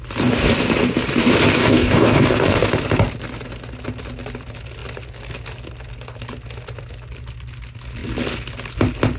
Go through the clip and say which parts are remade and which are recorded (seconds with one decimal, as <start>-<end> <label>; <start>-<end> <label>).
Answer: 0.0-1.6 recorded; 1.6-2.7 remade; 2.7-9.2 recorded